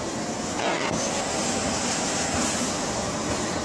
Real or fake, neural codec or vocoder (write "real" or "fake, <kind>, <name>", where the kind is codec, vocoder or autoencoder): real